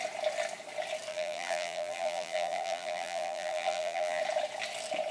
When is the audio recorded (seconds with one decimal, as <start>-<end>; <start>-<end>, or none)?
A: 0.0-1.1; 4.2-5.1